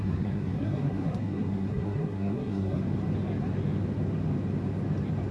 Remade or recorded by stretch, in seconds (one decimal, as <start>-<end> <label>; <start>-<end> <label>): 0.0-2.8 remade; 2.8-5.3 recorded